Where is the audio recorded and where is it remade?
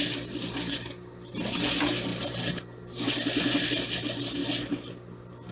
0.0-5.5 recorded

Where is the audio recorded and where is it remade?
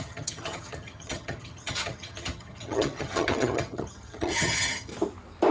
0.0-4.9 remade; 4.9-5.5 recorded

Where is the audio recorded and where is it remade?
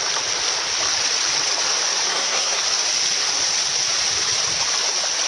0.0-2.1 recorded; 2.1-2.6 remade; 2.6-5.3 recorded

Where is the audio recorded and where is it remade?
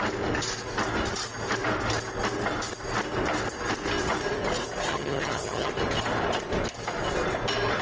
0.0-4.9 recorded; 4.9-5.7 remade; 5.7-7.8 recorded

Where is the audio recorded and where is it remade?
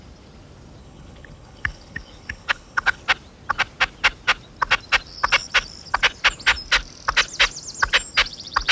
0.0-0.8 recorded; 0.8-3.0 remade; 3.0-8.7 recorded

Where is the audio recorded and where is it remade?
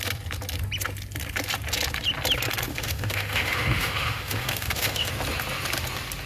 0.0-2.7 recorded; 2.7-5.1 remade; 5.1-6.3 recorded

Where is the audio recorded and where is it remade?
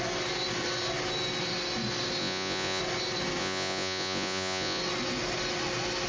0.0-2.2 recorded; 2.2-2.8 remade; 2.8-3.4 recorded; 3.4-4.8 remade; 4.8-6.1 recorded